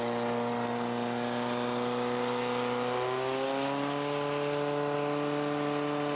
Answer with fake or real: real